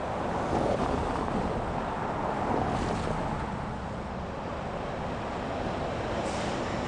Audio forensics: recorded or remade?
recorded